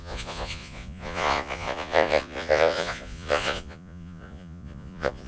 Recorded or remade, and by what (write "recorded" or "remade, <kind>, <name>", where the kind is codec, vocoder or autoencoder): remade, vocoder, Vocos